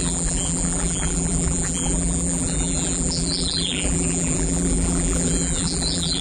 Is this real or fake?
fake